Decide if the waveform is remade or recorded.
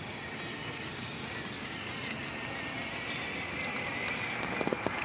recorded